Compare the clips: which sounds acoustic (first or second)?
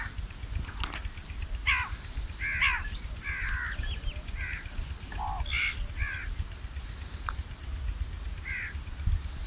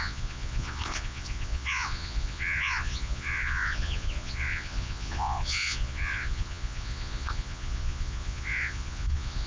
first